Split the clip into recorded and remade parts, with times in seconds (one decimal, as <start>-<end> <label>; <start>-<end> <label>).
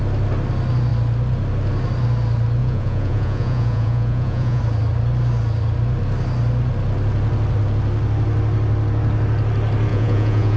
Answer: 0.0-2.6 recorded; 2.6-4.6 remade; 4.6-9.9 recorded; 9.9-10.6 remade